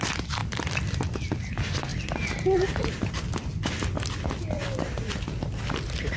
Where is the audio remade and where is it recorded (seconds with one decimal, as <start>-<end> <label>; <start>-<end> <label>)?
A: 0.0-0.4 remade; 0.4-1.4 recorded; 1.4-1.9 remade; 1.9-5.6 recorded; 5.6-6.2 remade